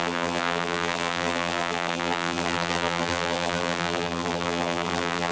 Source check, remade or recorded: remade